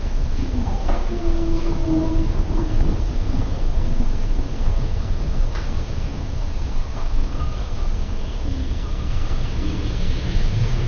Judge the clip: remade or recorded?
remade